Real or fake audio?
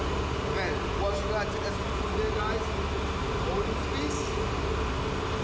real